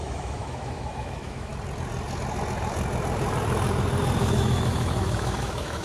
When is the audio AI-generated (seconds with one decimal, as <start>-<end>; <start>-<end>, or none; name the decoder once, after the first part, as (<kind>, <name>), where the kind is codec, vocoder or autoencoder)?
0.0-1.5 (autoencoder, DAC-VAE); 4.2-5.8